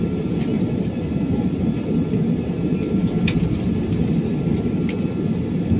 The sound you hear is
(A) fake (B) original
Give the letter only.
B